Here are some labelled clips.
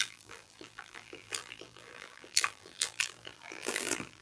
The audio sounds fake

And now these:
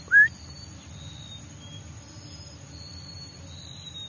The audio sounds real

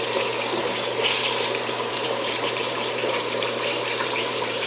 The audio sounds fake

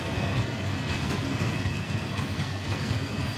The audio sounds fake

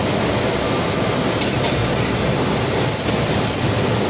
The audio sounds real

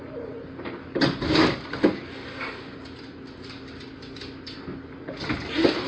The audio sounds real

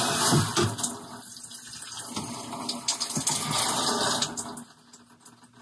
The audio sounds real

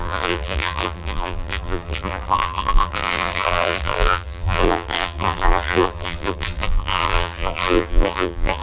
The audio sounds fake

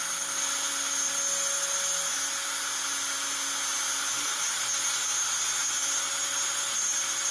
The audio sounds real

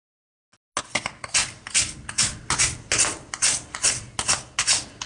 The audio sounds real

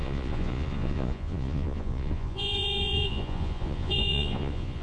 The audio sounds fake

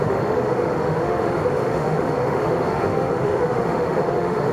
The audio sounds fake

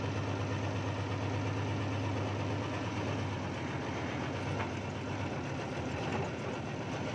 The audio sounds real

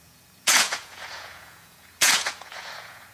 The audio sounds fake